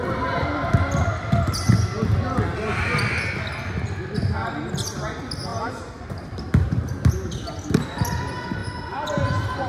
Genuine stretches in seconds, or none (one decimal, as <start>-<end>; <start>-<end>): 0.0-5.5; 7.1-9.7